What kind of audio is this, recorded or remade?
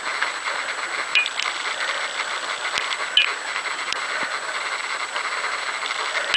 recorded